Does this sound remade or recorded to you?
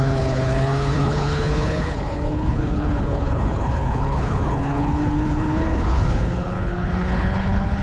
remade